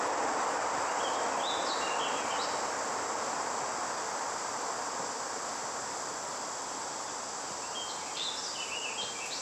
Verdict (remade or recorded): recorded